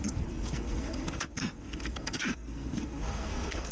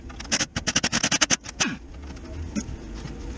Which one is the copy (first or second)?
first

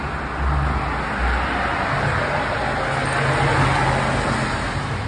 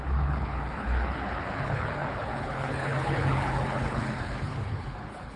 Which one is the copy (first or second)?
second